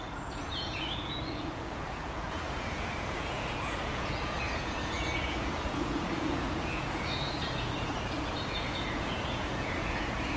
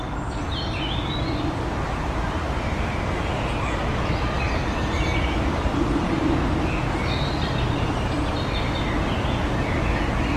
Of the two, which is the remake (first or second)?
first